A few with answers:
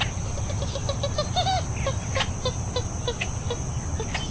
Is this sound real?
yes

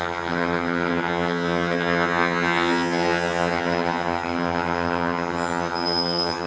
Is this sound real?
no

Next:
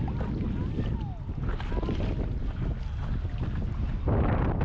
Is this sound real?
yes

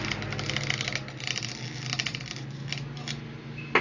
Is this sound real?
yes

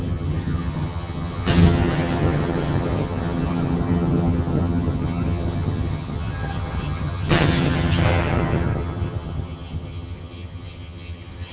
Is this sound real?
no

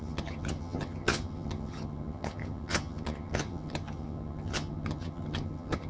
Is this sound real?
no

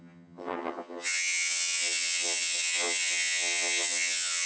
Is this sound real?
no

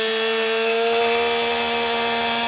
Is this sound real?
yes